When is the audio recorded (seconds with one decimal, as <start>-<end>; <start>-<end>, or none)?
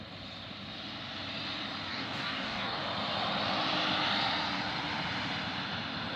0.0-1.9; 2.8-6.2